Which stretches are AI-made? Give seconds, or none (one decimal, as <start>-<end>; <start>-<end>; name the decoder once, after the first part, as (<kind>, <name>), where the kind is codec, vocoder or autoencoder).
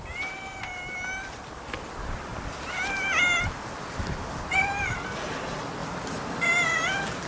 none